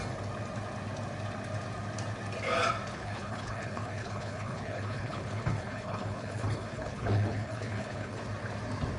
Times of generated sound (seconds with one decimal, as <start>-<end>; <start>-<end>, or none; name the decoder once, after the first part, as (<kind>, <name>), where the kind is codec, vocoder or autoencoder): 2.9-8.2 (codec, HILCodec)